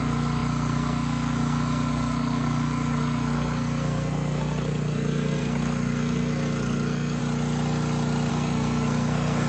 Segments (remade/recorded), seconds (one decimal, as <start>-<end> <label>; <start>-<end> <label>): 0.0-7.2 remade; 7.2-8.3 recorded; 8.3-9.5 remade